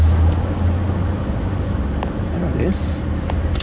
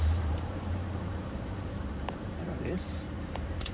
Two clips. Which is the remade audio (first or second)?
second